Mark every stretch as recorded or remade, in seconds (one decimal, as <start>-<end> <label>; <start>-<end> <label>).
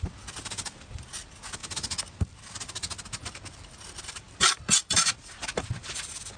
0.0-6.4 recorded